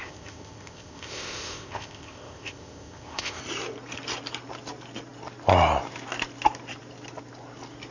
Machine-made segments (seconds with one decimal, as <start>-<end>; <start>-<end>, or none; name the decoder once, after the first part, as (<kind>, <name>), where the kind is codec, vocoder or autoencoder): 0.0-3.4 (codec, ZipCodec)